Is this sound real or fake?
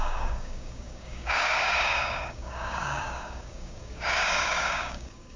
fake